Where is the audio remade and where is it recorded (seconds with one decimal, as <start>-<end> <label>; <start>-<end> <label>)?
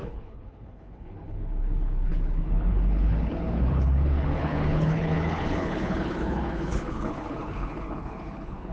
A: 0.0-8.7 remade